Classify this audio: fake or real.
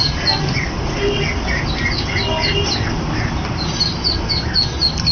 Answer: real